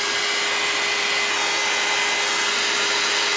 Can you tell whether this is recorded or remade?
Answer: recorded